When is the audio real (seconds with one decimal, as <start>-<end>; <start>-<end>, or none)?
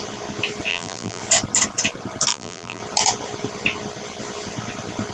0.0-0.7; 1.2-2.3; 2.8-5.1